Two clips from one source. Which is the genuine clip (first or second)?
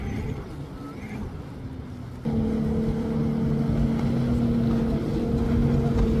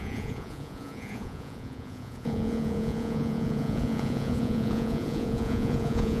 first